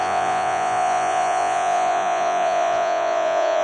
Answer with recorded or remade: remade